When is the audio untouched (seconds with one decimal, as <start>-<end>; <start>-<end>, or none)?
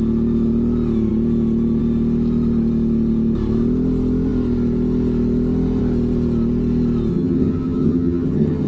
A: 0.0-7.1